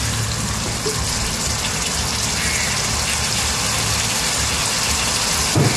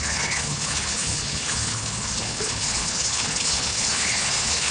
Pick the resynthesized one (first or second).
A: second